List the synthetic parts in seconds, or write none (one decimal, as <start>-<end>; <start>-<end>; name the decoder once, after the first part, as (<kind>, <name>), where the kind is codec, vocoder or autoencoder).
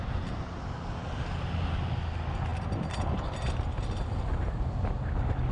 none